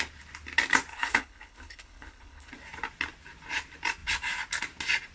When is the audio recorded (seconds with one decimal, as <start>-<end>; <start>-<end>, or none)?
0.0-0.9; 2.5-5.1